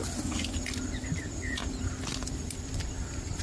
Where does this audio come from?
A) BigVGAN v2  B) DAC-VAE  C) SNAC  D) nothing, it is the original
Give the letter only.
A